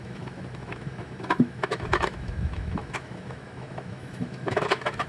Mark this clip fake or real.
fake